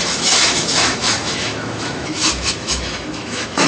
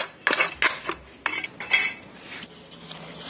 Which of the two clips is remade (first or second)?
first